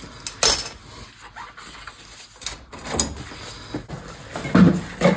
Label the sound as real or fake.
real